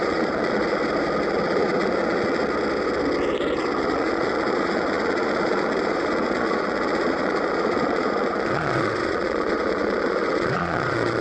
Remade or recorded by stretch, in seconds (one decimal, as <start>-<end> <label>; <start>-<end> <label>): 0.0-0.8 remade; 0.8-1.3 recorded; 1.3-2.4 remade; 2.4-3.8 recorded; 3.8-11.2 remade